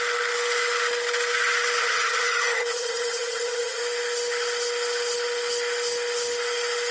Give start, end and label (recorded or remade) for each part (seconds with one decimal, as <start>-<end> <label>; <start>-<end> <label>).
0.0-1.8 recorded; 1.8-3.8 remade; 3.8-6.9 recorded